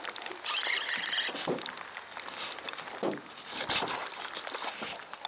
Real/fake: real